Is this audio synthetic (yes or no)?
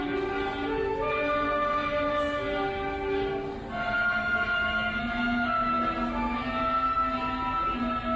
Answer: no